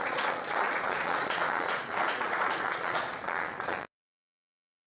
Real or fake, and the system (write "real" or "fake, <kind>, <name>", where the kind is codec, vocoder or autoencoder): fake, vocoder, Vocos